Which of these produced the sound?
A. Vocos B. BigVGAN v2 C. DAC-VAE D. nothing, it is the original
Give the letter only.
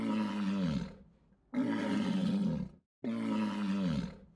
D